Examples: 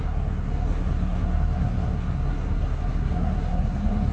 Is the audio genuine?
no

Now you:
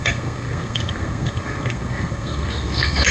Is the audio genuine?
no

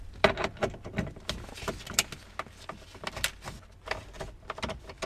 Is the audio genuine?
yes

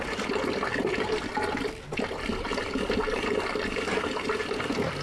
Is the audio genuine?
yes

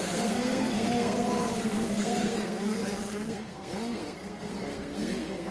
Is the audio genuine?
no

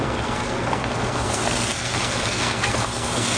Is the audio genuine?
no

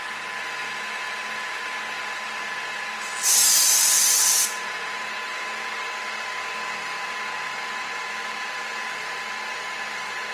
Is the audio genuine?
yes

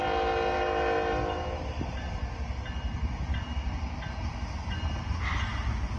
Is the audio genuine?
yes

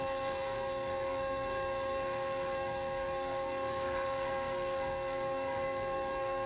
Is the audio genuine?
no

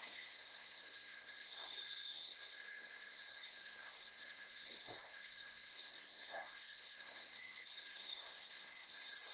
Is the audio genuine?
no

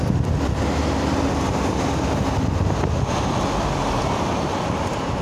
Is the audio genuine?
yes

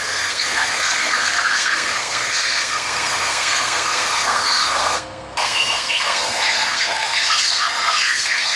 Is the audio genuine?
no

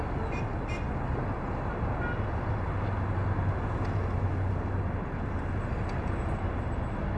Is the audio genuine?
yes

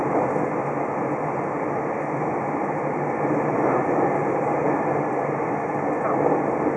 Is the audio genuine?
yes